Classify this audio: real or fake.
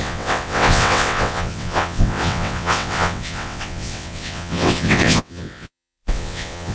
fake